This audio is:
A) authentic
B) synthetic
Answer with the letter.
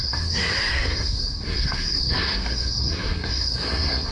B